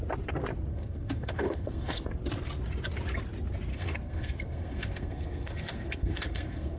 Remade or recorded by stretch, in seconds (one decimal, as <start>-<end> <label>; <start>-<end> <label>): 0.0-0.7 recorded; 0.7-2.1 remade; 2.1-3.7 recorded; 3.7-6.8 remade